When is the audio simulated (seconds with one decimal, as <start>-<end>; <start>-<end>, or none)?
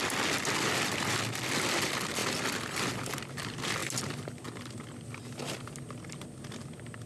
none